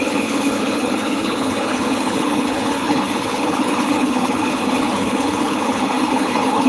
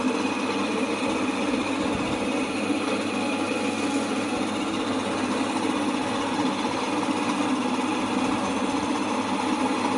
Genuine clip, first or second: second